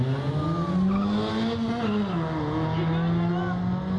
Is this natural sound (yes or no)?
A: yes